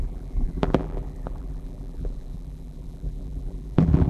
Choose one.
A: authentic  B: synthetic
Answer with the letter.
B